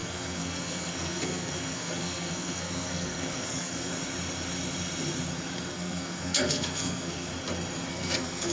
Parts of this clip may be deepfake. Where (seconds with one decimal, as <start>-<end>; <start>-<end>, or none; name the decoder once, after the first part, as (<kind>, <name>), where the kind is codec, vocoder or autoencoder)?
0.0-3.9 (codec, SNAC); 5.7-7.3; 7.9-8.5